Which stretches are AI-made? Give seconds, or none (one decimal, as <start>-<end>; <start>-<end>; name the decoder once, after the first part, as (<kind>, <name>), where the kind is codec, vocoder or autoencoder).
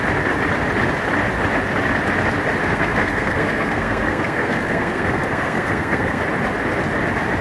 2.6-6.2 (codec, SNAC)